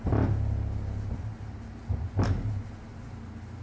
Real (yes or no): yes